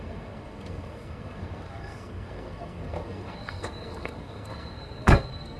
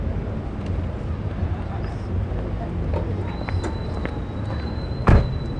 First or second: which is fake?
first